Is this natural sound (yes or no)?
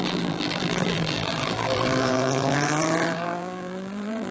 no